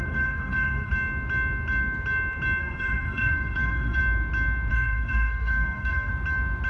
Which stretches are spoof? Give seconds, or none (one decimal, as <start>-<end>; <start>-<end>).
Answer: 0.0-0.9; 2.6-4.0; 4.7-6.1

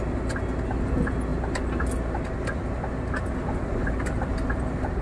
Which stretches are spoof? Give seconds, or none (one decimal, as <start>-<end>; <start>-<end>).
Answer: none

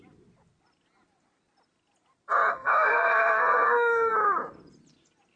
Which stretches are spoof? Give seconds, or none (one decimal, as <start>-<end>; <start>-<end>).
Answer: 2.5-4.1